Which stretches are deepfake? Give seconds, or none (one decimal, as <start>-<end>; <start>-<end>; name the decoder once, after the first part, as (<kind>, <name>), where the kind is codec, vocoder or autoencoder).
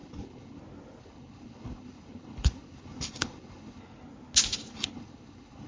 0.0-0.6 (codec, HILCodec); 1.0-3.8; 4.7-5.7